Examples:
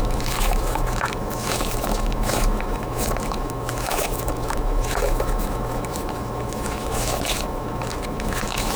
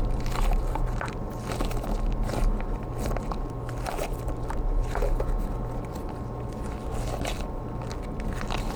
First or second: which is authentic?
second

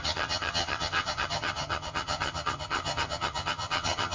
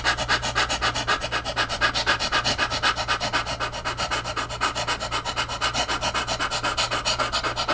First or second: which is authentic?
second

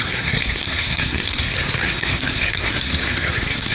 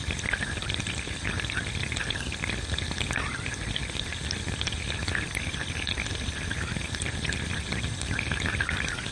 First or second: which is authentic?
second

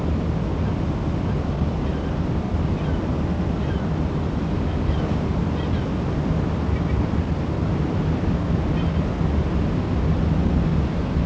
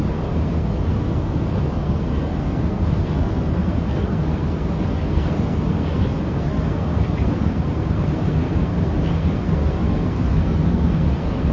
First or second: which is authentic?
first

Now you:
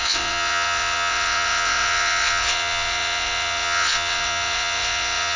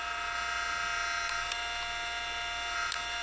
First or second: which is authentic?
second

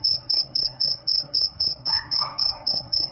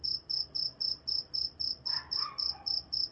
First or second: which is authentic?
second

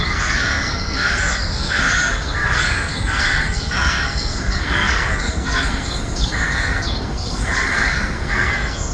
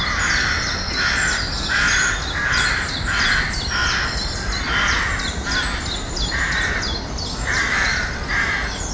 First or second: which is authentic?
second